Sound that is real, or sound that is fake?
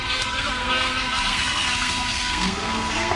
fake